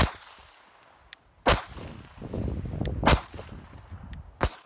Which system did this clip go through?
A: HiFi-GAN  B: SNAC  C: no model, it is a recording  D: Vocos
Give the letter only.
C